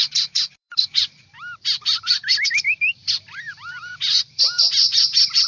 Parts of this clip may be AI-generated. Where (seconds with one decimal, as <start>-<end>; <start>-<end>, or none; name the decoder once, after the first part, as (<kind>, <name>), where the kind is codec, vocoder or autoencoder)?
0.0-2.2 (vocoder, BigVGAN v2); 3.0-3.9